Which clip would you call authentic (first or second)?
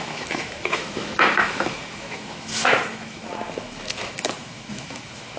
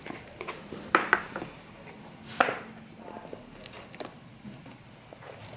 second